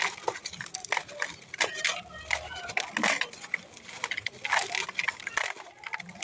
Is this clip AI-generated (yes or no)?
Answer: no